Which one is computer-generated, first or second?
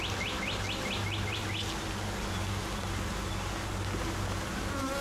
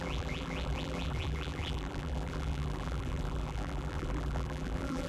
second